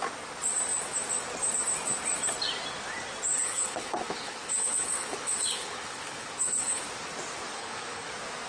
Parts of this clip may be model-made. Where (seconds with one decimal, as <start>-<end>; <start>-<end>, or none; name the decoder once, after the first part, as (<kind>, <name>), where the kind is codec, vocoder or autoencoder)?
3.3-6.8 (codec, HILCodec); 7.5-8.1